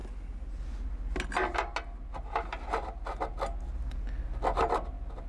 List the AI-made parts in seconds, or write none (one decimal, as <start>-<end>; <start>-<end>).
none